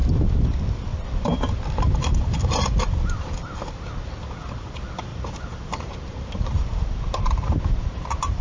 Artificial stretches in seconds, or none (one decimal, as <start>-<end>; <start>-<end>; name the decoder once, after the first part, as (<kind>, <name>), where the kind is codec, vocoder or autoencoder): 5.1-8.0 (vocoder, BigVGAN v2)